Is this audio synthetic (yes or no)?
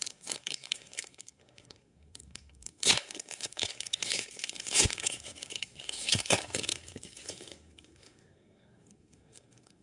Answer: yes